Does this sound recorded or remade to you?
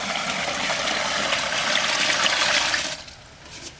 recorded